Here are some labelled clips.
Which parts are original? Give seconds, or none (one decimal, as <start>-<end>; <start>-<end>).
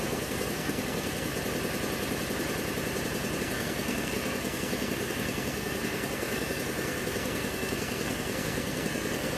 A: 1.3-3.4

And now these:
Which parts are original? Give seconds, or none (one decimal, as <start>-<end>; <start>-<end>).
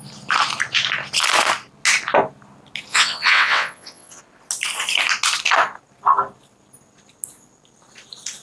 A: 0.0-2.9; 4.2-8.4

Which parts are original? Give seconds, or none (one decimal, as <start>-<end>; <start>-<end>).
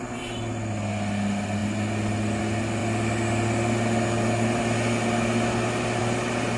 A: 0.0-6.6